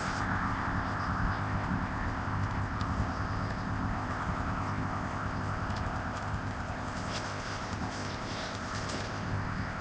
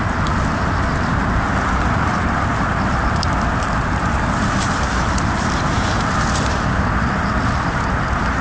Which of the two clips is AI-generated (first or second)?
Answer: first